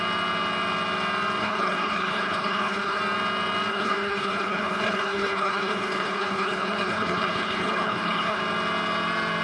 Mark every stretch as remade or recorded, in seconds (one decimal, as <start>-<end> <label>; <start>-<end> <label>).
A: 0.0-1.4 recorded; 1.4-3.0 remade; 3.0-3.7 recorded; 3.7-8.4 remade; 8.4-9.4 recorded